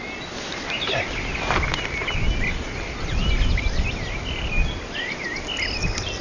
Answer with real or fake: real